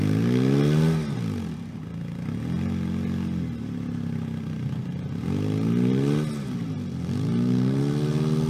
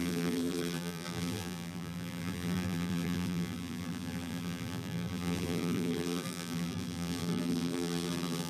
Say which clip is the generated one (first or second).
second